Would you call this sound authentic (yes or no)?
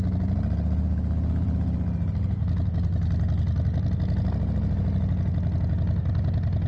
yes